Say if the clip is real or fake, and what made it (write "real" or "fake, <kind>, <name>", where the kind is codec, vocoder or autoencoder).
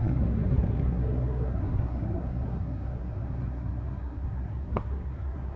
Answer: fake, codec, SNAC